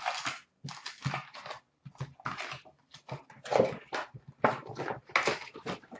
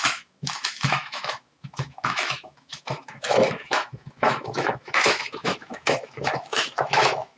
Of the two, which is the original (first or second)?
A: first